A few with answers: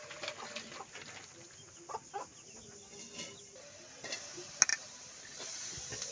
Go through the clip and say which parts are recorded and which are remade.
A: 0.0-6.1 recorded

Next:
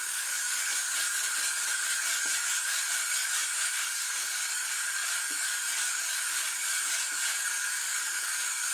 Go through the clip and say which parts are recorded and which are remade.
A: 0.0-8.7 remade

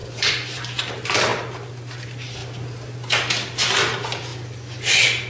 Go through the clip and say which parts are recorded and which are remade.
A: 0.0-0.6 remade; 0.6-5.3 recorded

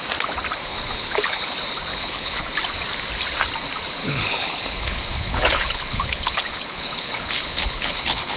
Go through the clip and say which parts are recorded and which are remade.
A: 0.0-0.6 recorded; 0.6-1.4 remade; 1.4-1.9 recorded; 1.9-2.5 remade; 2.5-4.0 recorded; 4.0-8.4 remade

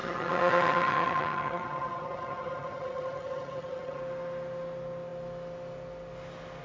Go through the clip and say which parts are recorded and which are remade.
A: 0.0-4.0 remade; 4.0-6.6 recorded